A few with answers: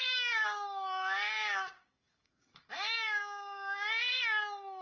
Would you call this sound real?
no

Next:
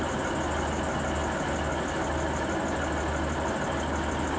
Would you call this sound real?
yes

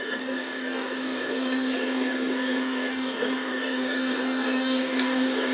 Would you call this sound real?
no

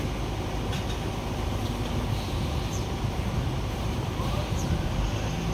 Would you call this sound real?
yes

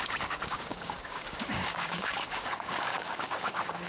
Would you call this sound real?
no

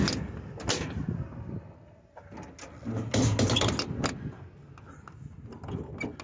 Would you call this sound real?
yes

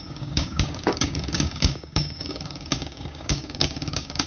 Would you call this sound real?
no